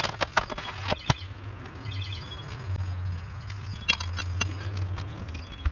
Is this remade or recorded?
recorded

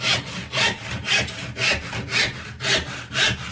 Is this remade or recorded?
recorded